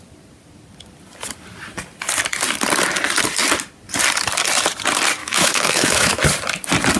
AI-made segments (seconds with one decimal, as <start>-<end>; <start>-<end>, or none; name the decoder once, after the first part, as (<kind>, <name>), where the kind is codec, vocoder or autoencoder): 5.2-6.2 (autoencoder, DAC-VAE)

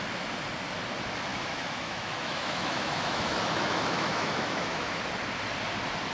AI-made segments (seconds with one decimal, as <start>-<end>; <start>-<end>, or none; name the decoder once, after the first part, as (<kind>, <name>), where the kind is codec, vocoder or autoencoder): 1.3-5.0 (autoencoder, DAC-VAE)